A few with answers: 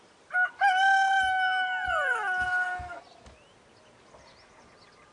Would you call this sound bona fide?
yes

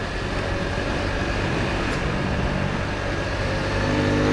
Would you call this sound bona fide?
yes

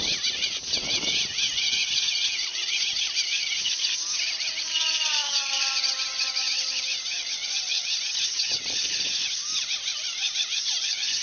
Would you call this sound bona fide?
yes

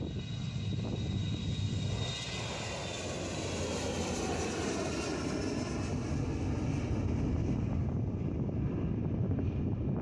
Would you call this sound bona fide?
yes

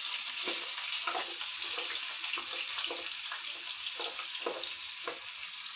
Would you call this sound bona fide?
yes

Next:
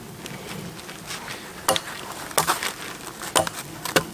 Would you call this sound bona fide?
yes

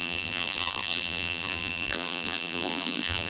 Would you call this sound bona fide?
no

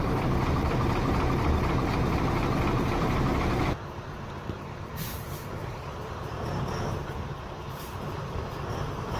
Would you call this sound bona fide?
no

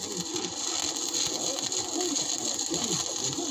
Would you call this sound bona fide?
yes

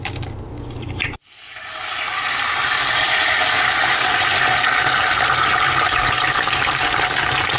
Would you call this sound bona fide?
yes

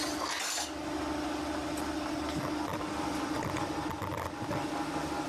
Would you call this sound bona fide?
yes